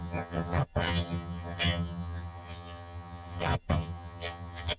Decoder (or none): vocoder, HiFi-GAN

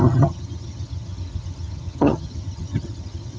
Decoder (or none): vocoder, HiFi-GAN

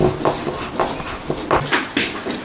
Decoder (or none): none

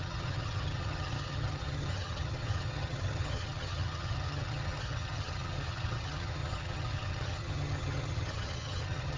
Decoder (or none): vocoder, HiFi-GAN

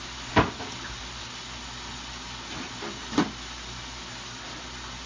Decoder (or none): none